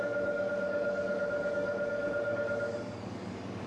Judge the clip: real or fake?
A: fake